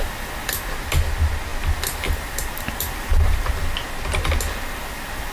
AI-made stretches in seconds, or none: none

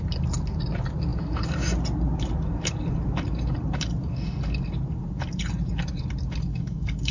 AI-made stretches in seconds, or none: 6.5-7.1 (codec, DAC)

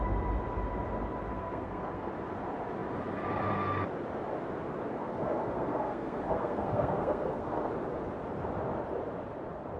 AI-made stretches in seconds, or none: 1.3-2.1 (codec, SNAC); 4.9-7.7

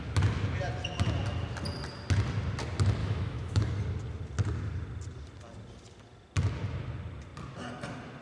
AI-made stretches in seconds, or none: 3.0-3.6 (autoencoder, DAC-VAE)

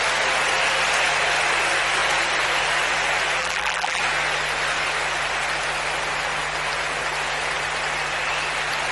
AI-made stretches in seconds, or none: 3.4-4.0 (vocoder, BigVGAN v2)